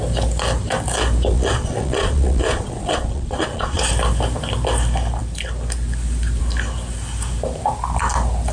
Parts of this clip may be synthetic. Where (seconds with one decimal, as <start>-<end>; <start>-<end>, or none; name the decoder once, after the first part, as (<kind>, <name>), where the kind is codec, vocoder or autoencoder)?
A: 1.3-3.8 (vocoder, Vocos)